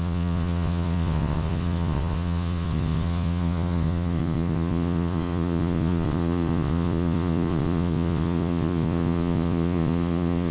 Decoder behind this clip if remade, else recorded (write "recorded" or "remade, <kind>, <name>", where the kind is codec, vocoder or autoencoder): remade, vocoder, Vocos